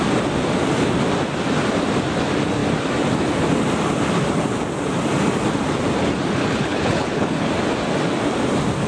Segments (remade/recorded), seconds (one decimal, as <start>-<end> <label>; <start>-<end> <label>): 0.0-6.4 recorded; 6.4-7.5 remade; 7.5-8.9 recorded